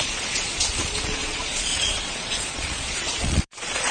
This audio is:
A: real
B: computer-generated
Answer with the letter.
B